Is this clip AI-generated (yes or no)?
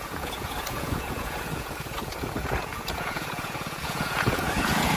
yes